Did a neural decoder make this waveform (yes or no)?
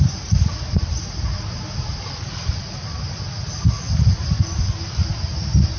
no